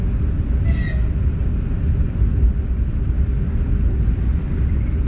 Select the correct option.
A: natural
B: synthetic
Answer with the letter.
A